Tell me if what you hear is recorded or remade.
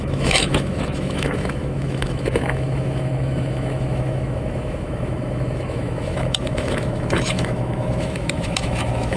remade